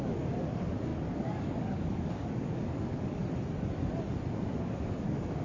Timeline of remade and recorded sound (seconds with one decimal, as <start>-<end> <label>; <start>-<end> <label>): 0.0-3.2 remade; 3.2-4.3 recorded; 4.3-5.4 remade

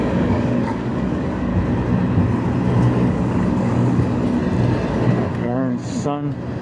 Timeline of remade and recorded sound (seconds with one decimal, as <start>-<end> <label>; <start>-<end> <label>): 0.0-1.5 remade; 1.5-3.1 recorded; 3.1-4.4 remade; 4.4-4.9 recorded; 4.9-5.8 remade; 5.8-6.6 recorded